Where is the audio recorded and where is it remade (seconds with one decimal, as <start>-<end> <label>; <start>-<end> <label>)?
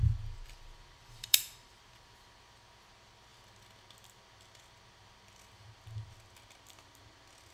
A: 0.0-1.0 recorded; 1.0-1.8 remade; 1.8-7.5 recorded